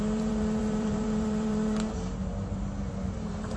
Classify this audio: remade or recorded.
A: remade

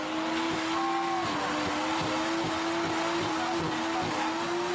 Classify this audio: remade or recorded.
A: recorded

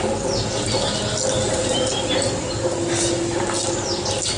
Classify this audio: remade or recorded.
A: recorded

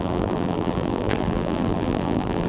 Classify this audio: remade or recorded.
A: remade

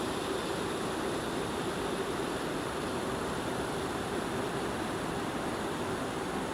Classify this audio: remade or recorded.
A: remade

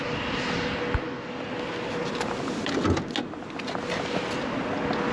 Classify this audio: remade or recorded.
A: recorded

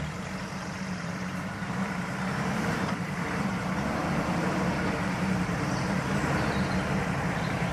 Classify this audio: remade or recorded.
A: remade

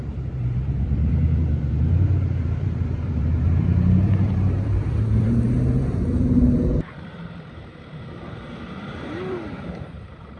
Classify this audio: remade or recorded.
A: remade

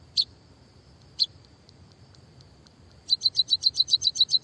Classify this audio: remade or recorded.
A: remade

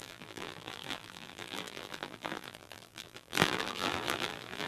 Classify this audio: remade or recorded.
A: remade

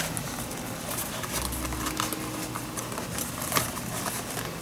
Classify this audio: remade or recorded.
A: recorded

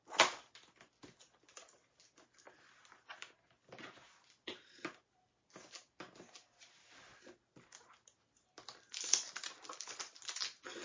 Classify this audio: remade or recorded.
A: recorded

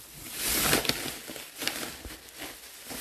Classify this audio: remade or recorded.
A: recorded